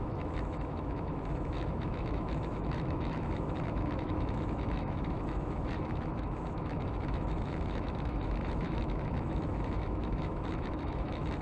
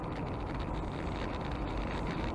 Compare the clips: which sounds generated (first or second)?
first